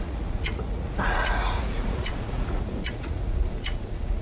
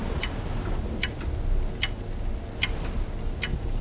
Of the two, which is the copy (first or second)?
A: first